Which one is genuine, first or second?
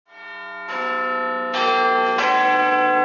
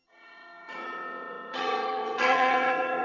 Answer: first